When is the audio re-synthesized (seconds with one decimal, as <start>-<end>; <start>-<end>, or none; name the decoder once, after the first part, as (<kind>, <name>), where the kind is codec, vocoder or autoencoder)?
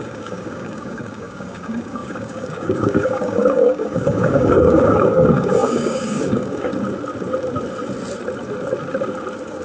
0.0-6.7 (codec, DAC)